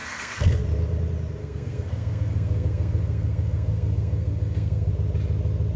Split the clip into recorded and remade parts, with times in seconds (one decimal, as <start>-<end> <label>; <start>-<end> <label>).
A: 0.0-0.6 remade; 0.6-1.4 recorded; 1.4-4.9 remade; 4.9-5.8 recorded